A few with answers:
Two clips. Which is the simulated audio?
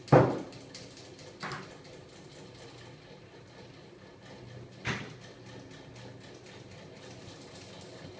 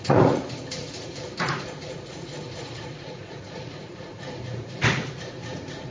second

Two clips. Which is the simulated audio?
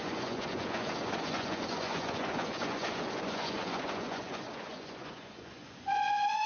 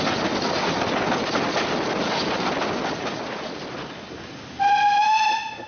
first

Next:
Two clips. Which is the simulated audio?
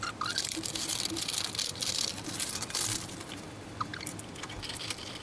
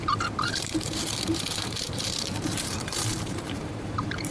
second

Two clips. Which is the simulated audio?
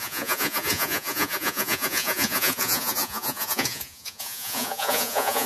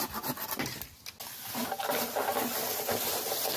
first